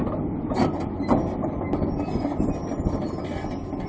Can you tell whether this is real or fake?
real